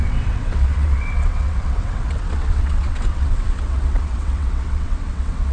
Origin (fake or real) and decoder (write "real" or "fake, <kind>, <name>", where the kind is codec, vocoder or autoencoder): fake, vocoder, WaveNeXt